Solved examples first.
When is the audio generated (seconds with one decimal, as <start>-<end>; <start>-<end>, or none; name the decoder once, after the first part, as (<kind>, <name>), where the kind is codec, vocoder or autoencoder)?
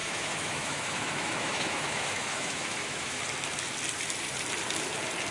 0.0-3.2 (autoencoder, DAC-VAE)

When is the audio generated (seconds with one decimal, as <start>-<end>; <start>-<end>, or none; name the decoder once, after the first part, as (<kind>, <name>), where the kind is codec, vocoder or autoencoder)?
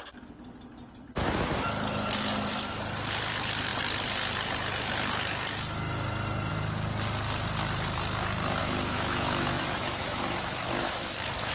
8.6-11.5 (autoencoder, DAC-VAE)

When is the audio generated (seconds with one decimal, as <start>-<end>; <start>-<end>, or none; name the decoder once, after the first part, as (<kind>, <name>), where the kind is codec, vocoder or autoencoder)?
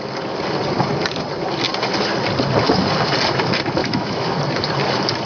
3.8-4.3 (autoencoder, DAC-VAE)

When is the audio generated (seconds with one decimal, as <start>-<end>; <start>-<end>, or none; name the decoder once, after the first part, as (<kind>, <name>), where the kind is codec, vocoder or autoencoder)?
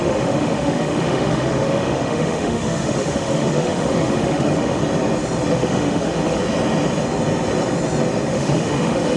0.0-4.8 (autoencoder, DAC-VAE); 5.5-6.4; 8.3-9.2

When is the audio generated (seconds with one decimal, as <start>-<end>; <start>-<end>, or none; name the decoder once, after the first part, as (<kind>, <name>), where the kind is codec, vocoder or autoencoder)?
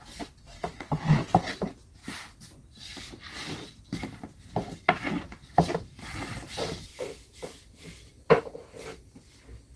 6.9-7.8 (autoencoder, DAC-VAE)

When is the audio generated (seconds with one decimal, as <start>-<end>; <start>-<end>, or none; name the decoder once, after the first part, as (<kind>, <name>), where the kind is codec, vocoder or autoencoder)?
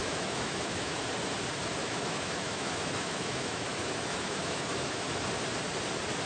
0.0-1.1 (autoencoder, DAC-VAE); 1.8-5.1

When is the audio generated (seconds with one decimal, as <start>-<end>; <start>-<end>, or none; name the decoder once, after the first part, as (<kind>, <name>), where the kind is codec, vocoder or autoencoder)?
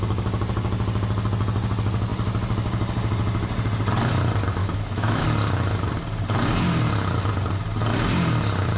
4.6-5.2 (autoencoder, DAC-VAE)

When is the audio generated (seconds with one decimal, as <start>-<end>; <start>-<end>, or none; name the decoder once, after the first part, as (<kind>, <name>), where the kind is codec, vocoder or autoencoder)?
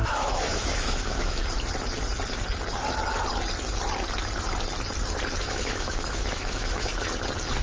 0.0-1.4 (autoencoder, DAC-VAE); 5.4-6.9